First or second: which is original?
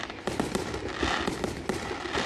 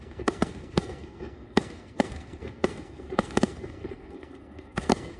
first